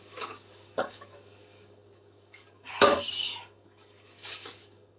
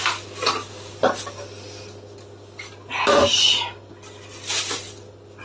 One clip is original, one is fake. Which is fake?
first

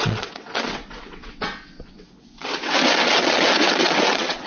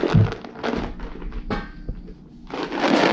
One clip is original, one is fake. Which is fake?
first